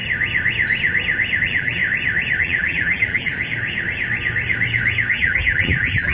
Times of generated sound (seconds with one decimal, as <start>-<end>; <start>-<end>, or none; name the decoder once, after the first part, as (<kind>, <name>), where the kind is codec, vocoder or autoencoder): 1.4-1.8 (vocoder, BigVGAN v2); 2.4-3.3; 5.1-6.1